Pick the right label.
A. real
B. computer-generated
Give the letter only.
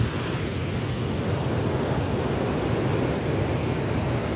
A